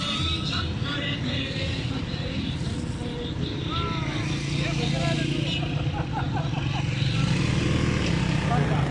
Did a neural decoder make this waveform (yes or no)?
no